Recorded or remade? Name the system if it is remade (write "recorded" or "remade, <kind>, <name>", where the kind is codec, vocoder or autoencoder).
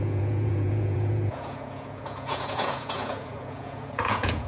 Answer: remade, vocoder, Vocos